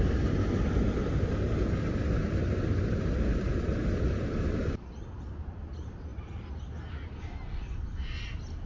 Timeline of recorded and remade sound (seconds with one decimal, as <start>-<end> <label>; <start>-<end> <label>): 0.0-8.7 recorded